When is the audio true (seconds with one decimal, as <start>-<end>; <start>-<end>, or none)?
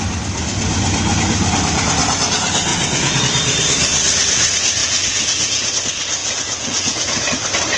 0.0-2.7; 3.2-4.8; 5.7-6.2; 7.3-7.8